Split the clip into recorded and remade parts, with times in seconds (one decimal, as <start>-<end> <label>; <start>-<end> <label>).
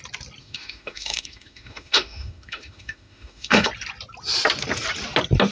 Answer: 0.0-0.4 recorded; 0.4-3.7 remade; 3.7-5.5 recorded